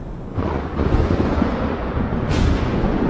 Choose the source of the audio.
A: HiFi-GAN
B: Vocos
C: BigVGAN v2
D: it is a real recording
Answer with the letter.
B